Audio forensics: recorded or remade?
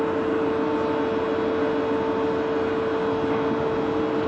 recorded